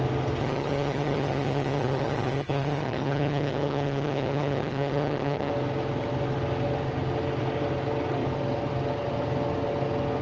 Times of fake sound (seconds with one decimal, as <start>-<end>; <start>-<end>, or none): 0.4-5.5